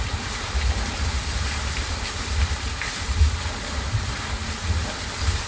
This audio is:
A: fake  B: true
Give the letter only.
B